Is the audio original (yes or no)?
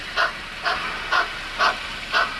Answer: yes